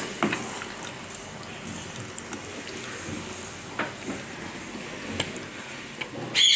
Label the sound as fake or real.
real